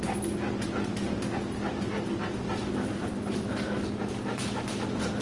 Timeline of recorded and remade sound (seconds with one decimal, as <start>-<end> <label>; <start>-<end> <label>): 0.0-5.2 recorded